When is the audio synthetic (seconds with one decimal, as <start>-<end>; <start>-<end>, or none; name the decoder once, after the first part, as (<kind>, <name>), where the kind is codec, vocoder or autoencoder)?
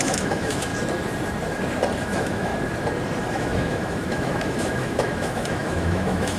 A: 0.0-0.7 (autoencoder, DAC-VAE); 2.0-2.5; 3.3-6.4